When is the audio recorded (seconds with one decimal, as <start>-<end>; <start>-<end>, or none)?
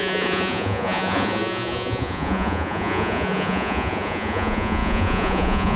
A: none